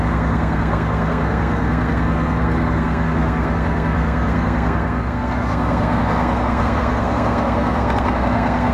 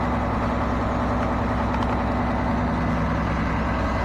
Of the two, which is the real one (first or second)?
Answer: second